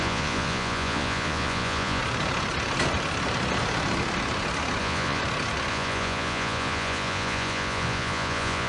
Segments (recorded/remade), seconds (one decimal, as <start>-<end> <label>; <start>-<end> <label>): 0.0-2.0 remade; 2.0-4.8 recorded; 4.8-5.2 remade; 5.2-5.7 recorded; 5.7-8.7 remade